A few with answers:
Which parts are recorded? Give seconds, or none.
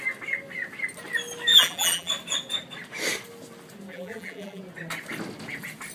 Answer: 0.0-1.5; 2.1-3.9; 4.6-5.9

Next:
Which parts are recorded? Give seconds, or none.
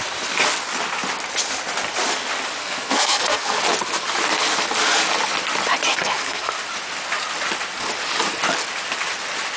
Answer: 0.0-2.6; 3.6-5.9; 6.5-9.6